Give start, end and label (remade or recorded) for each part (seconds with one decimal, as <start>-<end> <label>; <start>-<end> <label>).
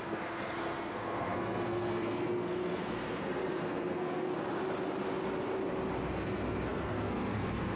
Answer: 0.0-4.3 remade; 4.3-6.1 recorded; 6.1-7.8 remade